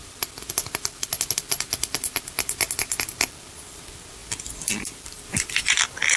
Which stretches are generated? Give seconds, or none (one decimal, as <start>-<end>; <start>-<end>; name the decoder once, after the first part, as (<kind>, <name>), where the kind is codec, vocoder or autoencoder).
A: 4.2-6.2 (vocoder, BigVGAN v2)